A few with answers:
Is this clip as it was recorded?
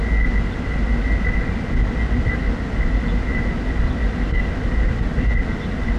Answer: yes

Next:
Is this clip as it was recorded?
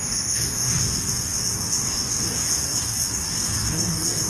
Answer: no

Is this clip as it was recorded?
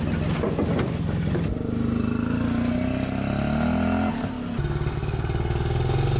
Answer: yes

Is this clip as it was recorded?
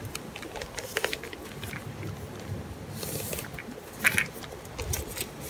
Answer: yes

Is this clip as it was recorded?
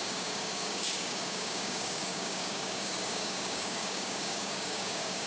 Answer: no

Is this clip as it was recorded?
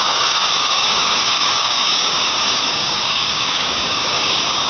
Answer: no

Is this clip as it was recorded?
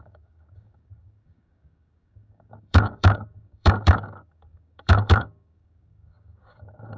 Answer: no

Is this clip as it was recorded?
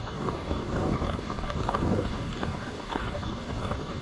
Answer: no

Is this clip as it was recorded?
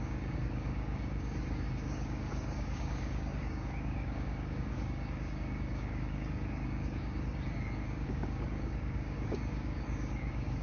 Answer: no